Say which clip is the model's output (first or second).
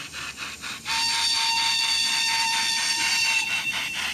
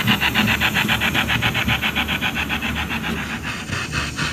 first